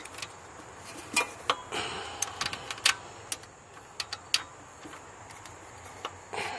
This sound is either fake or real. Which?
real